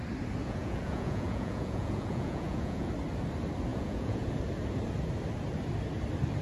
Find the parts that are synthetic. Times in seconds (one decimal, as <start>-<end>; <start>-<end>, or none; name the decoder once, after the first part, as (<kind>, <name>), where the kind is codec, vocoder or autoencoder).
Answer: 0.4-2.9 (vocoder, Vocos); 3.7-4.3